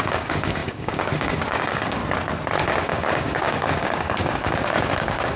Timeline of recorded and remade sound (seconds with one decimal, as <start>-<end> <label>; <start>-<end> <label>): 0.0-2.0 remade; 2.0-2.6 recorded; 2.6-5.4 remade